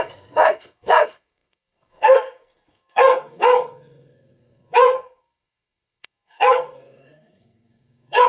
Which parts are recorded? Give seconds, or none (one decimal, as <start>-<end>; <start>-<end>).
none